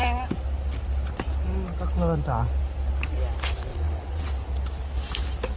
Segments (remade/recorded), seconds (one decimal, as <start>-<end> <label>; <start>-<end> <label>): 0.0-3.7 recorded; 3.7-4.3 remade; 4.3-5.6 recorded